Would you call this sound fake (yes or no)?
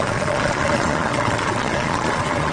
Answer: yes